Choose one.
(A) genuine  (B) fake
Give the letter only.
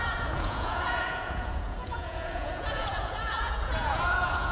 B